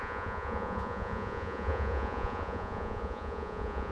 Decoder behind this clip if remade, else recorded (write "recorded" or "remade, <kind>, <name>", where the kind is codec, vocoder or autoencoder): remade, vocoder, Vocos